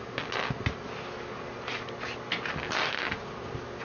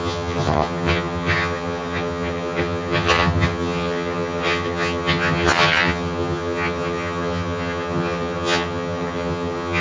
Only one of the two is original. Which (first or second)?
first